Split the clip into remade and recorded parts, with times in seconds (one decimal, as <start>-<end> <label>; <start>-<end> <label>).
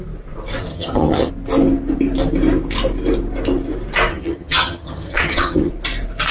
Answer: 0.0-0.7 recorded; 0.7-1.3 remade; 1.3-4.1 recorded; 4.1-5.7 remade; 5.7-6.3 recorded